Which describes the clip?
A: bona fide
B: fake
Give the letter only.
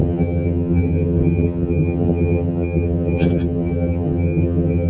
B